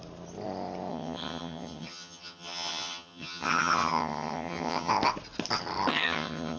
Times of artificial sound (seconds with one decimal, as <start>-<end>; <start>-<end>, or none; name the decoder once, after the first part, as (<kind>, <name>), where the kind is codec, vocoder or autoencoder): 0.9-4.9 (vocoder, HiFi-GAN); 5.9-6.6